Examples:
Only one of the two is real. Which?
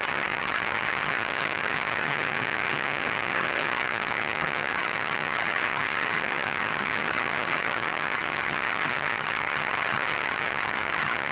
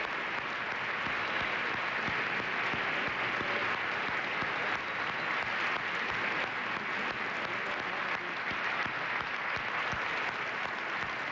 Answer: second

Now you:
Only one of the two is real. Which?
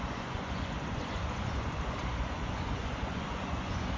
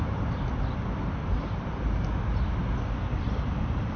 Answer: second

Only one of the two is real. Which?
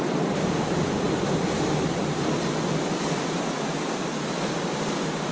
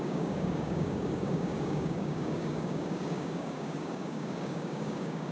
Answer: first